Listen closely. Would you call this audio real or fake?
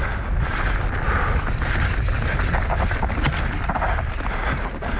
real